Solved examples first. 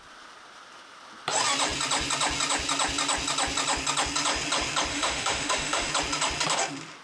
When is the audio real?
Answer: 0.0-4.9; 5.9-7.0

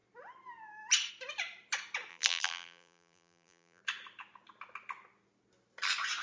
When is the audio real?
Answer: 0.0-2.1; 3.8-6.2